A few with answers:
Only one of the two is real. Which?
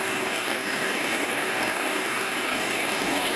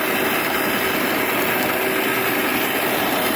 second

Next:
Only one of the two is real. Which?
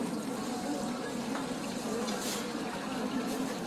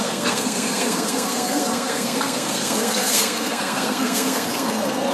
first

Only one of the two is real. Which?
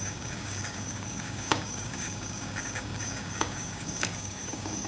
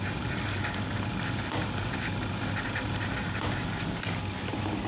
second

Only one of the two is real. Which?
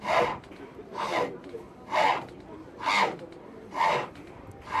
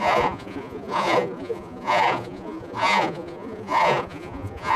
first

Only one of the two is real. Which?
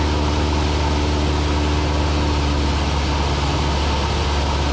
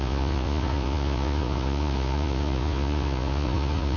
first